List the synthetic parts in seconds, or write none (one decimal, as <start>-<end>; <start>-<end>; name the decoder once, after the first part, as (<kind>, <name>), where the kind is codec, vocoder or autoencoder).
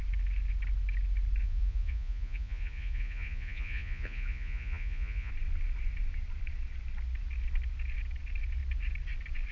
1.4-5.3 (vocoder, Vocos)